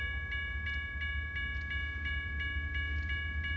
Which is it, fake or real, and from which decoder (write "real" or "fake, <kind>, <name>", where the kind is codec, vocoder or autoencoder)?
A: real